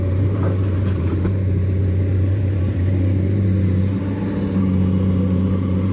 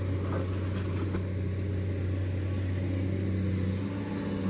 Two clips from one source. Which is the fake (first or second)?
first